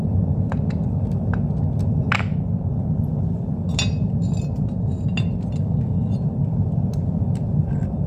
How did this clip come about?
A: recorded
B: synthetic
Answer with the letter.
A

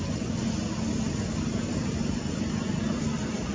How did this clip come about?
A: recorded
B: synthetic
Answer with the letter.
A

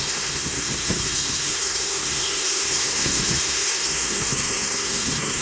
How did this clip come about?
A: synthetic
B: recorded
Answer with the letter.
A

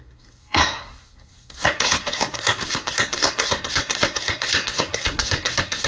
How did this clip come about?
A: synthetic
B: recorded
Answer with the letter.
A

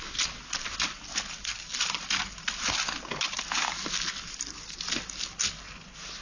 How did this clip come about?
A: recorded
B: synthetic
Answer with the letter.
A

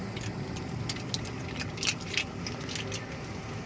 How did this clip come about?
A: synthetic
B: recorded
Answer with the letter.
B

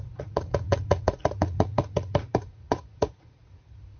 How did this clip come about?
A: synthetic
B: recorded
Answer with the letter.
A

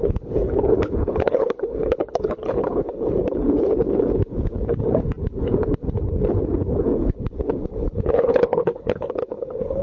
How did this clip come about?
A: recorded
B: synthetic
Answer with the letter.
B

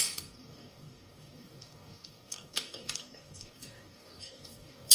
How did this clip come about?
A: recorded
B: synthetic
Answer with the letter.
B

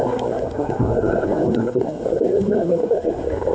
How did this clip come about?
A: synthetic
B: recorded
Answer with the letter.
A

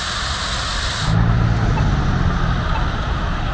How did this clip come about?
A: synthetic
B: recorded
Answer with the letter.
B